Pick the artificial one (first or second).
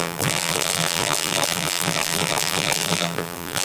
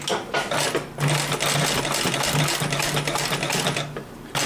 first